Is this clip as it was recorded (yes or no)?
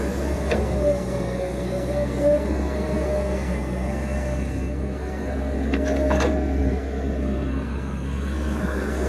no